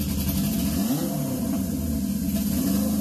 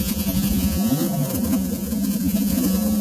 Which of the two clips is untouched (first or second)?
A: first